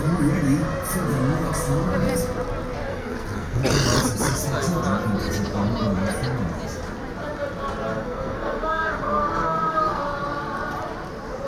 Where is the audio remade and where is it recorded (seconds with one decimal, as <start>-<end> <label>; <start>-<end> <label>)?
0.0-2.9 recorded; 2.9-3.6 remade; 3.6-7.9 recorded; 7.9-10.0 remade; 10.0-11.5 recorded